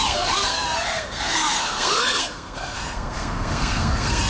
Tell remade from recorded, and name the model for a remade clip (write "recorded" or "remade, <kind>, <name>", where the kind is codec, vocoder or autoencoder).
remade, codec, SNAC